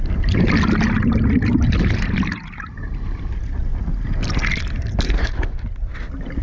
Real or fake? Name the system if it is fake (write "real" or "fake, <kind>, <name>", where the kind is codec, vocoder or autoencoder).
real